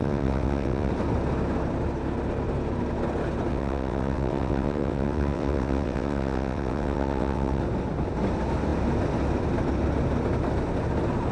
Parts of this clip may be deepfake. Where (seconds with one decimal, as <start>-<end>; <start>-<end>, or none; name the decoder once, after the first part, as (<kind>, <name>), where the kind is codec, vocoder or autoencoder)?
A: 0.0-0.9 (vocoder, WaveNeXt); 3.5-7.6